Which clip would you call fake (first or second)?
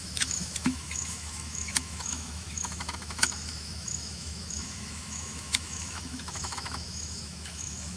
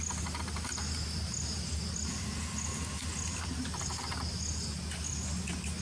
first